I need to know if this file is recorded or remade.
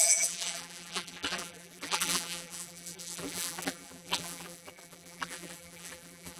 remade